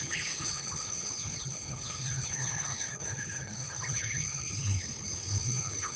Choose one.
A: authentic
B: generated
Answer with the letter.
B